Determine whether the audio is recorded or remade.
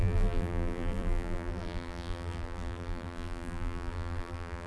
remade